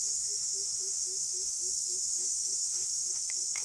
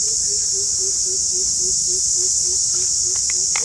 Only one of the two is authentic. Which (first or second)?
second